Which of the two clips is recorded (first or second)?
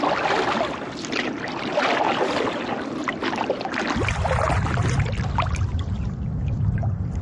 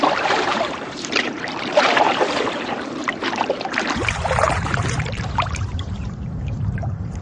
first